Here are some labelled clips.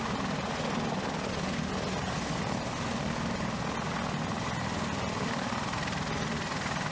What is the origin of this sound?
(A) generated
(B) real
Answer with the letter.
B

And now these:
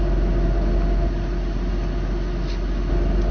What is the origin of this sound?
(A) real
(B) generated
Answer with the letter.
A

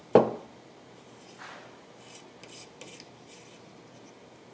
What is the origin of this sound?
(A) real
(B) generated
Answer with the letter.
A